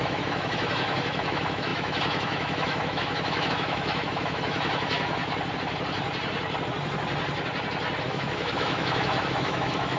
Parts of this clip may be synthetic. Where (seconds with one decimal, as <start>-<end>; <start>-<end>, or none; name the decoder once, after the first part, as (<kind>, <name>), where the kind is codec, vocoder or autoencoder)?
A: 0.0-5.2 (autoencoder, DAC-VAE); 8.0-10.0